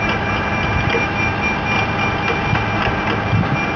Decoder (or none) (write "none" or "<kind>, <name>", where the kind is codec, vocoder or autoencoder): none